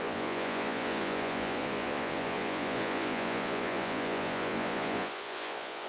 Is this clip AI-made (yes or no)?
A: yes